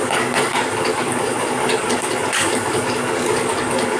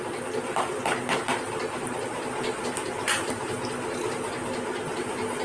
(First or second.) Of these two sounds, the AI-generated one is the first